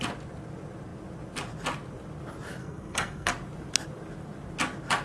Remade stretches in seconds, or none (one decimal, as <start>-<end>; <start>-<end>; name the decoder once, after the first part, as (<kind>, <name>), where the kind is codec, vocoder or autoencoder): 2.6-3.3 (codec, SNAC)